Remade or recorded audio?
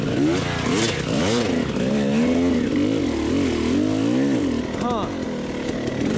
recorded